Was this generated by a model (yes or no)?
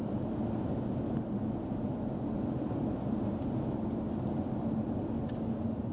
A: no